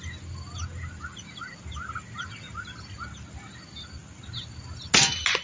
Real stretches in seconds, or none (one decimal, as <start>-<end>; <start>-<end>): 0.0-5.4